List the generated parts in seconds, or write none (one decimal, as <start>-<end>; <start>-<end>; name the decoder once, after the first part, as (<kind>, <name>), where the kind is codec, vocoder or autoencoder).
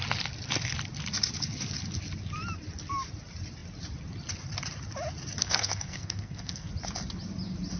5.4-6.7 (codec, SNAC)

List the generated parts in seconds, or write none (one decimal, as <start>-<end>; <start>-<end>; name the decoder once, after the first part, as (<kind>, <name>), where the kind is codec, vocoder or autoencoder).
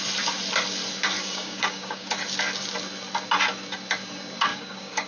1.2-2.1 (codec, DAC); 4.5-5.1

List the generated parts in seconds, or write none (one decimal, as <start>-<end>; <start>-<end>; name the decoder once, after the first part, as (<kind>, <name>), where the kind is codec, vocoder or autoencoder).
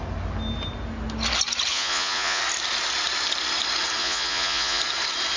1.7-2.4 (vocoder, Vocos); 4.0-4.8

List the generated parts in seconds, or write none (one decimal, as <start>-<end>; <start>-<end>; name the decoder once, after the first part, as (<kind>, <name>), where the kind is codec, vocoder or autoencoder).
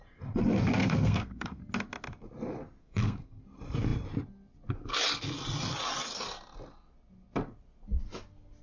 0.8-1.6 (codec, SNAC); 2.8-3.4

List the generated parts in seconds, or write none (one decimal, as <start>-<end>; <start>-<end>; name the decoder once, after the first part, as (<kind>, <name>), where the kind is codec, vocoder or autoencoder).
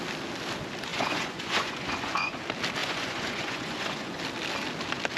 0.9-2.4 (vocoder, Vocos); 2.8-4.2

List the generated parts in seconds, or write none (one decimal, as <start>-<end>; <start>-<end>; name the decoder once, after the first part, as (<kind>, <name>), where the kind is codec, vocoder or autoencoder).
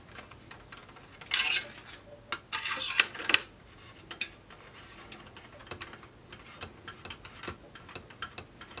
none